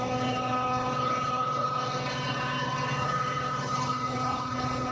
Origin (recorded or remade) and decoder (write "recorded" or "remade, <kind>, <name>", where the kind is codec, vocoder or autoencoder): remade, codec, HILCodec